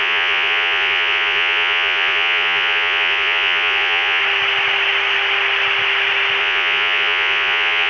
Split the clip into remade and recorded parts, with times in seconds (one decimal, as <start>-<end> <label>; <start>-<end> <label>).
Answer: 0.0-4.2 remade; 4.2-6.4 recorded; 6.4-7.9 remade